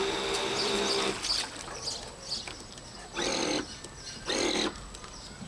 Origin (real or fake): real